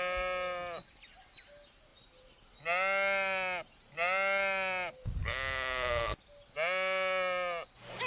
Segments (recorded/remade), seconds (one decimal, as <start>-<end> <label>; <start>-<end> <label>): 0.0-8.1 recorded